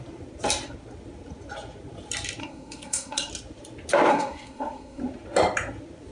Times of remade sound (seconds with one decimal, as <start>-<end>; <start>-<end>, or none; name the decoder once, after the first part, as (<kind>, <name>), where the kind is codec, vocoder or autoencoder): 2.4-3.3 (codec, SNAC); 4.1-5.0